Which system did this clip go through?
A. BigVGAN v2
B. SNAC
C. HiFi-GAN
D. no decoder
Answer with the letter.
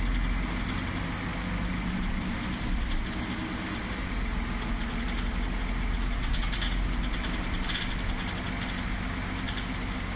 D